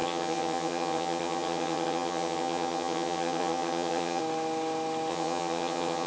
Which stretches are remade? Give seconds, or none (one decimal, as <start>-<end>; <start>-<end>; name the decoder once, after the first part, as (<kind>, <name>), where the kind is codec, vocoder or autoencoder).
0.0-4.2 (vocoder, HiFi-GAN); 5.1-6.1